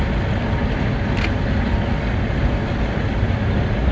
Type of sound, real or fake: real